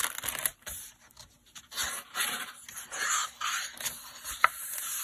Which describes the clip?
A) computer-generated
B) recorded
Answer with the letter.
B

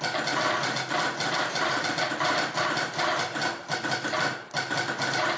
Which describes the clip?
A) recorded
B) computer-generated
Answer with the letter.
A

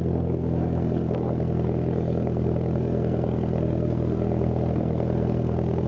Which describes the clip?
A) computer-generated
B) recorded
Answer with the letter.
A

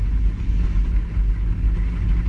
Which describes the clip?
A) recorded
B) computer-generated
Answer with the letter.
A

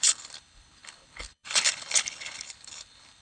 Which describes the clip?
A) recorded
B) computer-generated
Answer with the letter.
B